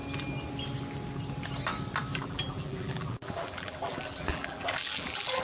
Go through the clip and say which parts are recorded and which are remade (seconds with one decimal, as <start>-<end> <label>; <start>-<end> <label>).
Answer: 0.0-2.1 recorded; 2.1-5.4 remade